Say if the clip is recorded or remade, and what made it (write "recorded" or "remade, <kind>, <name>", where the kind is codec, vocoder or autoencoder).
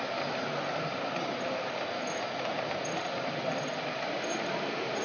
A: recorded